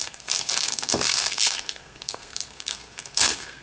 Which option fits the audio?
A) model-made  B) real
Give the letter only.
A